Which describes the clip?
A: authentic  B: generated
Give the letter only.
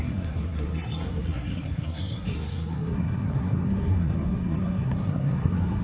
B